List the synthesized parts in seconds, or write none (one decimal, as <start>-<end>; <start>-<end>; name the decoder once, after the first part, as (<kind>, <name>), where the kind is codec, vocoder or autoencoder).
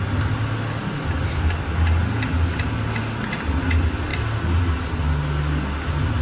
none